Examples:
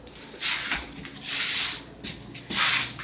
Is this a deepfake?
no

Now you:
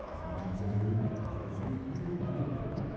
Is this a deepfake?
yes